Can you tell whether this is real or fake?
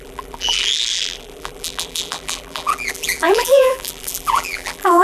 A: fake